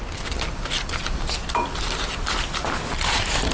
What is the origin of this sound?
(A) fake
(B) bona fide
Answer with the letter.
B